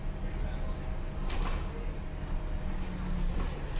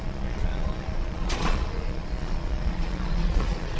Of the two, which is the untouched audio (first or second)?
first